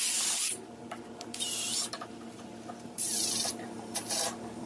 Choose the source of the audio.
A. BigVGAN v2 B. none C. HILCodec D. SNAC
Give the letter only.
A